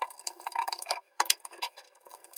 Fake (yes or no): yes